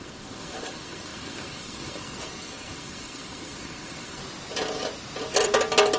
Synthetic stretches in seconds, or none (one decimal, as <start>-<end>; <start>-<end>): 0.0-4.2